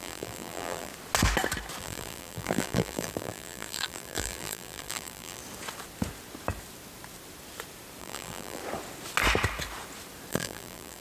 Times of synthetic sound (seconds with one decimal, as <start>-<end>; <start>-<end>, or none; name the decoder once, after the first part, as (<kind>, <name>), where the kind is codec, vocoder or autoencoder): 0.0-0.9 (vocoder, BigVGAN v2); 1.8-5.4; 8.0-8.6; 10.3-11.0

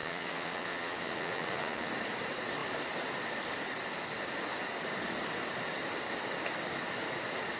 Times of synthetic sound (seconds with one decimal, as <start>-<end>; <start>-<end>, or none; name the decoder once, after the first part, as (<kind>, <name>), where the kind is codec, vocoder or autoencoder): 0.0-1.9 (vocoder, Vocos)